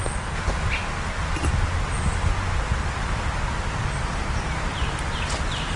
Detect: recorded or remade recorded